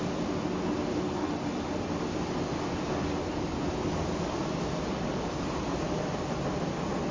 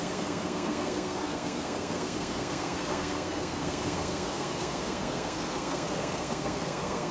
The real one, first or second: first